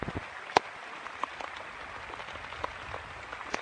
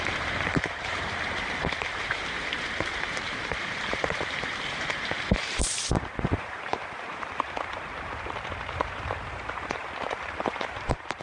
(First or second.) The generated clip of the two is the second